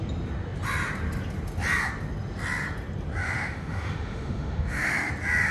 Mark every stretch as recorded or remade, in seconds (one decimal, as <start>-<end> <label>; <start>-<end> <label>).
0.0-3.2 recorded; 3.2-5.1 remade; 5.1-5.5 recorded